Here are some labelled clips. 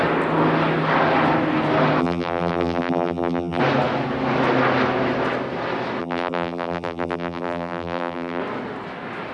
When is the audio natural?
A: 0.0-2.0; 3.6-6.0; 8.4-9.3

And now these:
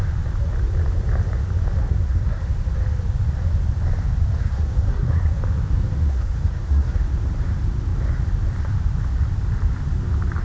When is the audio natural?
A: 0.0-1.8; 2.4-4.4; 5.3-6.1; 7.0-10.4

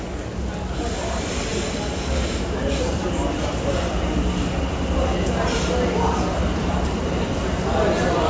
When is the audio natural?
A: 0.0-8.3

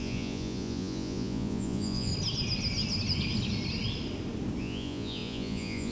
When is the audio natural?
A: 2.1-4.6